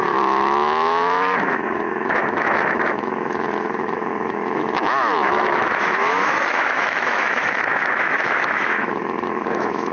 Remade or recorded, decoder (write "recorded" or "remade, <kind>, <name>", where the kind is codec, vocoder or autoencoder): remade, autoencoder, DAC-VAE